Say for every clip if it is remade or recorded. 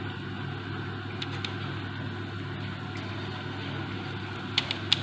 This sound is recorded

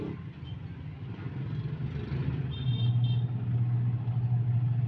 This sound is recorded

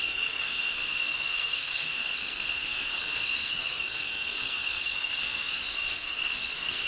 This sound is remade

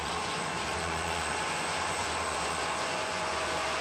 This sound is remade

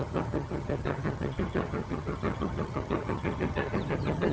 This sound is remade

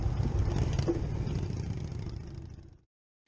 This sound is remade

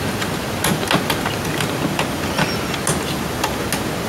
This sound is recorded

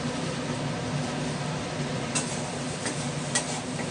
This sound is recorded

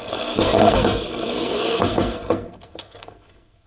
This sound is remade